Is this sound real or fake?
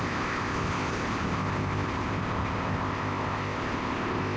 fake